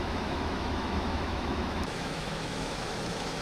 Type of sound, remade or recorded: remade